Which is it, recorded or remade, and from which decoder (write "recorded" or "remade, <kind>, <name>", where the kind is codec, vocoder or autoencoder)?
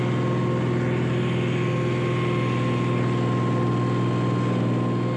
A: recorded